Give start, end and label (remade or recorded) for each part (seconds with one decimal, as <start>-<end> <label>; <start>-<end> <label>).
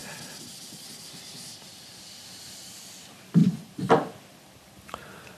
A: 0.0-5.4 recorded